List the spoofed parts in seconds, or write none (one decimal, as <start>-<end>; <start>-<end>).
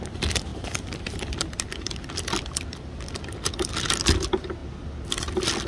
0.5-2.1; 4.6-5.2